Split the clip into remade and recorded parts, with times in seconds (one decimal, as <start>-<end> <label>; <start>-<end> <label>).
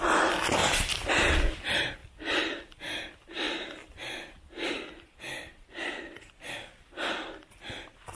0.0-0.6 recorded; 0.6-1.4 remade; 1.4-8.2 recorded